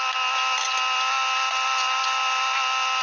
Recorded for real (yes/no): yes